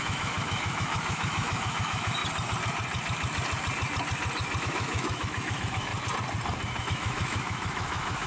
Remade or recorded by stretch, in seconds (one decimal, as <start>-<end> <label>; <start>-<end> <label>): 0.0-2.2 remade; 2.2-4.6 recorded; 4.6-5.9 remade; 5.9-6.8 recorded; 6.8-8.3 remade